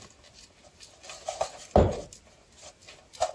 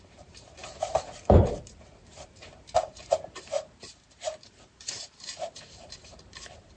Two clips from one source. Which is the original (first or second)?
first